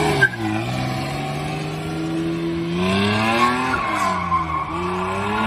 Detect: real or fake real